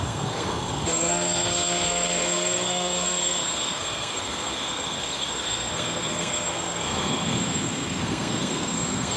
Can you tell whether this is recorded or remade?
remade